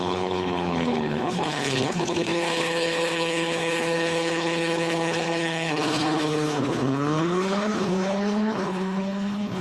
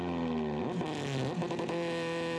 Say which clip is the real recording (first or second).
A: second